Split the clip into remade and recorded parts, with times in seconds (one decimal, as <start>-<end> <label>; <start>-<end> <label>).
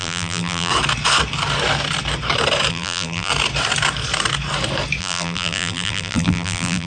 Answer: 0.0-0.7 remade; 0.7-2.7 recorded; 2.7-3.3 remade; 3.3-5.0 recorded; 5.0-6.9 remade